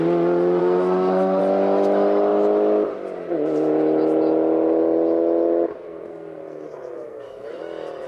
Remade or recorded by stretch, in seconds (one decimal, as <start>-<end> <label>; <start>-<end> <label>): 0.0-0.6 recorded; 0.6-1.4 remade; 1.4-5.7 recorded; 5.7-7.6 remade; 7.6-8.1 recorded